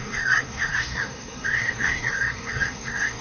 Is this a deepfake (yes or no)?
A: yes